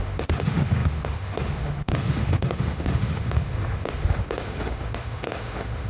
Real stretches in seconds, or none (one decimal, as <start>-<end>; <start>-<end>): none